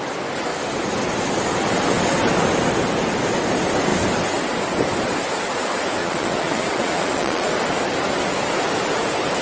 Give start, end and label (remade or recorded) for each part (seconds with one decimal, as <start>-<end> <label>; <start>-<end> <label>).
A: 0.0-6.0 recorded; 6.0-7.5 remade; 7.5-9.4 recorded